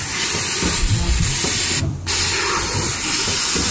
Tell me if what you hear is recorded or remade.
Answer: recorded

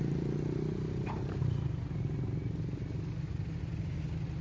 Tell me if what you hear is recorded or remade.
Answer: recorded